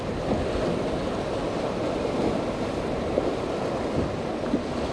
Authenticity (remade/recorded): recorded